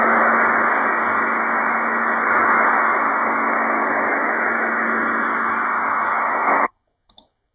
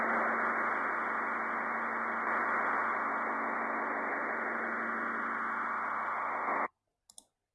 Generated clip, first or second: first